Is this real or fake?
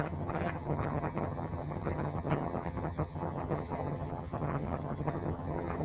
fake